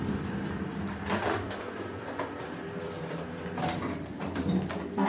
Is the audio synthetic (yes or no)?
yes